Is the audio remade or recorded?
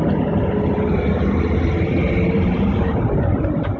recorded